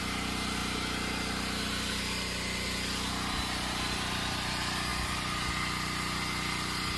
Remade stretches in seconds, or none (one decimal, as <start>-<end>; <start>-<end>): none